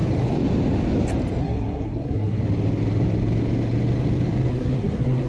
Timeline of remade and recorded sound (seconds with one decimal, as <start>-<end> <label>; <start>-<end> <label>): 0.0-1.4 recorded; 1.4-2.4 remade; 2.4-4.5 recorded; 4.5-5.3 remade